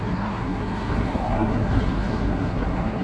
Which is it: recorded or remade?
remade